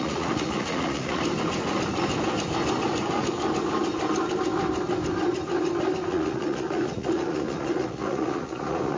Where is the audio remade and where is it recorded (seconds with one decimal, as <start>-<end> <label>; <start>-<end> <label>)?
0.0-1.2 remade; 1.2-6.1 recorded; 6.1-9.0 remade